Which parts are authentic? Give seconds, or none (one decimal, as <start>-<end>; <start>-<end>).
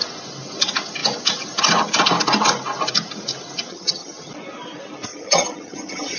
0.0-3.7; 4.3-5.1